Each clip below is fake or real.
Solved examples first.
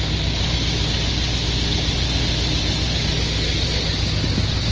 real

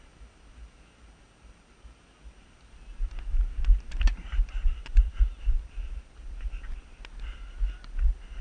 real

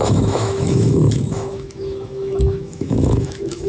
fake